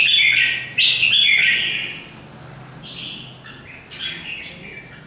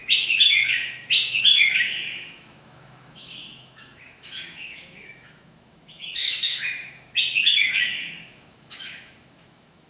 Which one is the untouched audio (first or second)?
first